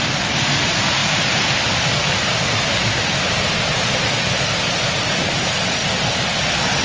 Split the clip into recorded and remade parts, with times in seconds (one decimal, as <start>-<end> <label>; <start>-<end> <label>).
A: 0.0-6.8 recorded